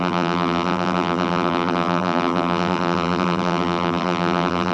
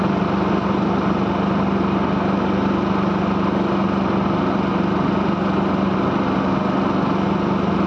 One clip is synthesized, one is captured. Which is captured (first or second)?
second